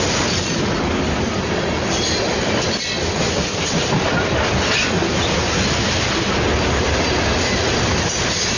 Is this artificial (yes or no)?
no